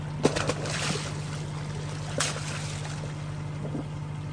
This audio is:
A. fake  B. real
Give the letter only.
B